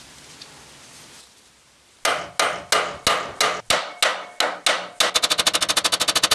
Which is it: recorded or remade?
recorded